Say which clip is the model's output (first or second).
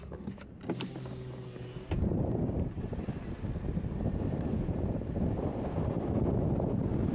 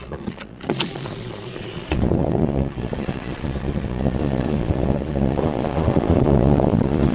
second